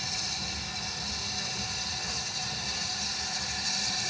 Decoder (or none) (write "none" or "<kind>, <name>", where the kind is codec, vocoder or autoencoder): none